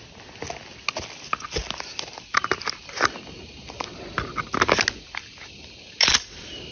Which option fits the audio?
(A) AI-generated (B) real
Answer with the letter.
B